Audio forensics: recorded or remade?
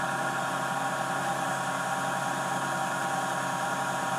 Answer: recorded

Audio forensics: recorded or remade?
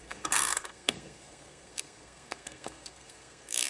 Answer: remade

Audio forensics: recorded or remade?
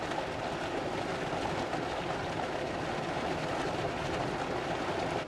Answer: recorded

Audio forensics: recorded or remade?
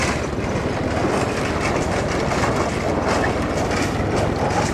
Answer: recorded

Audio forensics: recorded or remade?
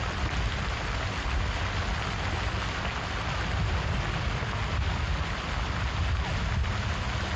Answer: recorded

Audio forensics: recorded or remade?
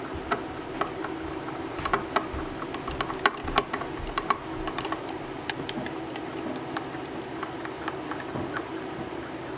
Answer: recorded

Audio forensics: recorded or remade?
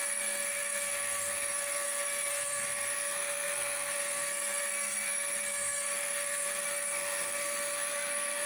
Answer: remade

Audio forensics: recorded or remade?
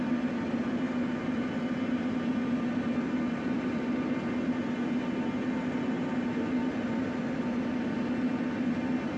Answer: recorded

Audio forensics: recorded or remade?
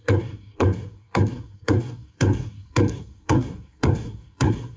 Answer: remade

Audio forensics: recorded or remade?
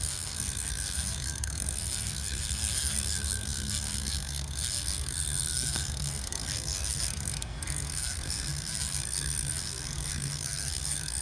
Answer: remade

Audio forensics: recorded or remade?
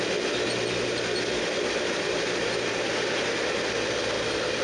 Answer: recorded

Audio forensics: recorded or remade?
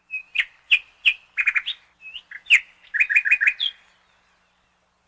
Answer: recorded